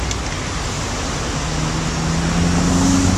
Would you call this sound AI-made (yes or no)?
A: no